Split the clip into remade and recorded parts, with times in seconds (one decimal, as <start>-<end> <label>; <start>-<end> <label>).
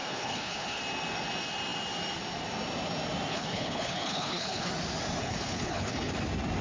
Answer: 0.0-0.8 remade; 0.8-3.3 recorded; 3.3-4.7 remade; 4.7-5.2 recorded; 5.2-6.1 remade; 6.1-6.6 recorded